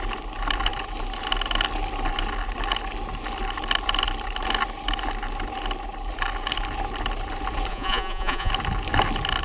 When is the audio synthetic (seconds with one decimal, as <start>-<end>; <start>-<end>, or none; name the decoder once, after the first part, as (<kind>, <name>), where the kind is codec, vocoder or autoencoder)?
7.7-8.5 (vocoder, Vocos)